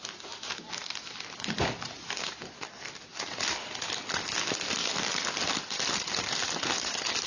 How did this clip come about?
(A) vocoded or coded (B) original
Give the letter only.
B